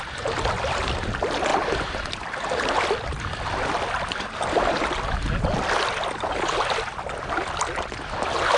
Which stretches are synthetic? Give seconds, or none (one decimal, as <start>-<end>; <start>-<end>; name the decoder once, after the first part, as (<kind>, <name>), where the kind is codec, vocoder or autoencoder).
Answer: none